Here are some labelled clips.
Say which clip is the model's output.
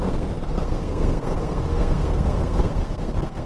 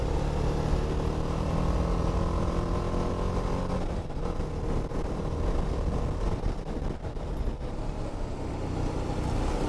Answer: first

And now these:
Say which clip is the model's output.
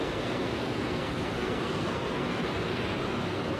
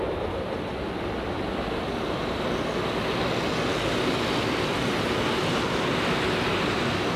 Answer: first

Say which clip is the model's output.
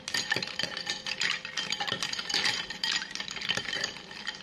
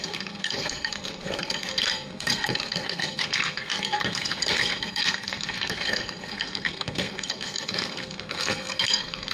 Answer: second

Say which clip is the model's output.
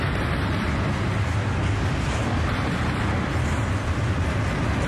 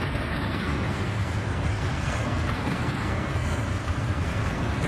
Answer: second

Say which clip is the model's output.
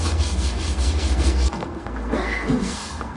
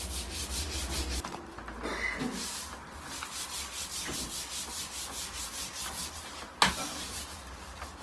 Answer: first